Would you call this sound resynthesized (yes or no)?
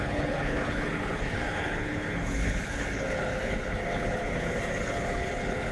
yes